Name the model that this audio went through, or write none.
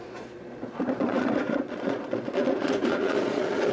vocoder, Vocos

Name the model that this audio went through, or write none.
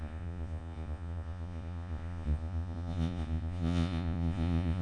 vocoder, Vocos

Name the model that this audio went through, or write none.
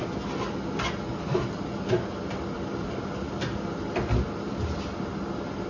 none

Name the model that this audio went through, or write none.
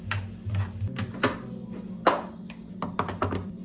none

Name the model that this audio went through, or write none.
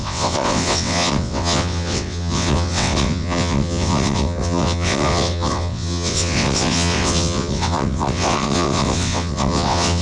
vocoder, WaveNeXt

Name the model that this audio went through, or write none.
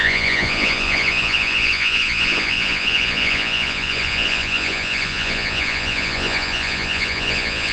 vocoder, Vocos